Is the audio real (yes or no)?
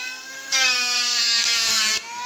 no